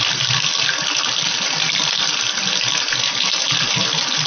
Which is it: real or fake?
real